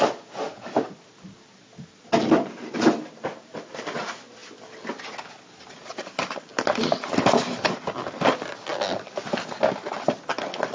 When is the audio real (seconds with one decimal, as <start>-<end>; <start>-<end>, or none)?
0.0-10.7